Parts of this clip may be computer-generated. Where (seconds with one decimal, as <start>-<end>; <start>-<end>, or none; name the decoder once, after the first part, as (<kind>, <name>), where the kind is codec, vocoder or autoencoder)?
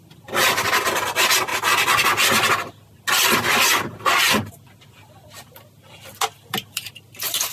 none